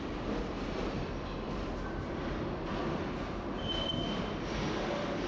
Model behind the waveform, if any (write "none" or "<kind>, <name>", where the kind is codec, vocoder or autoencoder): none